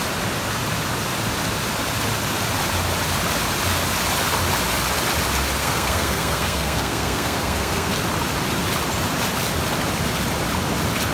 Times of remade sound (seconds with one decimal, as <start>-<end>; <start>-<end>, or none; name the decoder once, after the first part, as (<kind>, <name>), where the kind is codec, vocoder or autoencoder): 5.6-7.9 (codec, SNAC)